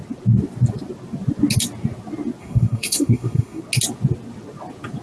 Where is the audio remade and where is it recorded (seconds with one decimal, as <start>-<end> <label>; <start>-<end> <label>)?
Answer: 0.0-2.4 recorded; 2.4-3.6 remade; 3.6-5.0 recorded